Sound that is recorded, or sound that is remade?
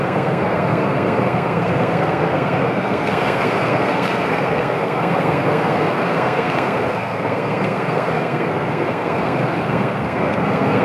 remade